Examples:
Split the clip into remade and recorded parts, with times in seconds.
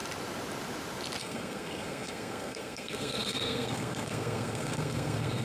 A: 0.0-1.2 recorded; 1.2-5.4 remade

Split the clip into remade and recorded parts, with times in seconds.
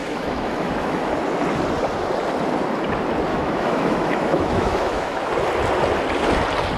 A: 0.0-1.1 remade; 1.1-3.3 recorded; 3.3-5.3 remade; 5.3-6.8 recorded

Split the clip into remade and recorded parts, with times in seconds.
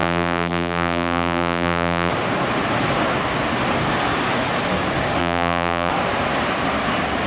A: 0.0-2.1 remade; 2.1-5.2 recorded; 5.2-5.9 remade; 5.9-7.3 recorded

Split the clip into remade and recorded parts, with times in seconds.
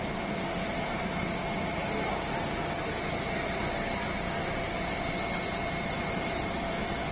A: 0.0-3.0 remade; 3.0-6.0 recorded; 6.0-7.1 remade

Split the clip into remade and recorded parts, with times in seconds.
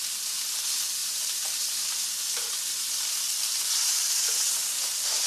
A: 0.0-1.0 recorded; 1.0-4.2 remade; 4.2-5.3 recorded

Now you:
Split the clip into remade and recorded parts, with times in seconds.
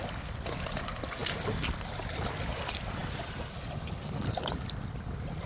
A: 0.0-5.5 recorded